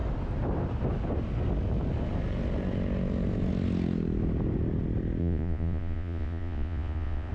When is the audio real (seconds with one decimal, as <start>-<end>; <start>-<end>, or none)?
0.0-5.2